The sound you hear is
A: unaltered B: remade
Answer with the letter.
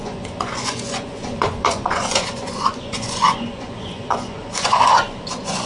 B